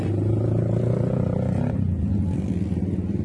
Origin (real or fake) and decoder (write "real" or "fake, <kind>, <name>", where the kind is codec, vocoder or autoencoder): real